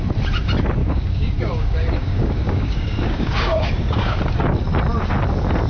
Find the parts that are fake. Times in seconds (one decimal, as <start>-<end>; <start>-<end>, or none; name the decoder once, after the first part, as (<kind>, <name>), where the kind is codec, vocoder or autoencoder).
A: 0.8-4.2 (codec, DAC)